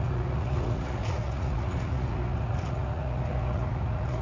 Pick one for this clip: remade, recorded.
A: remade